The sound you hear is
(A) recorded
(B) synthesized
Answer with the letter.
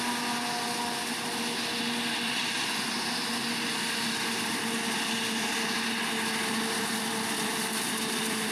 A